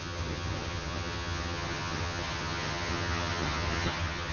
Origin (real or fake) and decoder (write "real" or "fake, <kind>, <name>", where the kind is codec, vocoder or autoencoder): fake, vocoder, HiFi-GAN